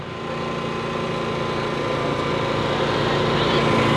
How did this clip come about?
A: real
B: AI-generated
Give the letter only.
A